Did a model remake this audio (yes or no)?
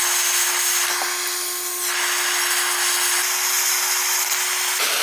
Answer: no